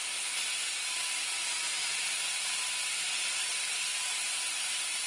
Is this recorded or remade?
recorded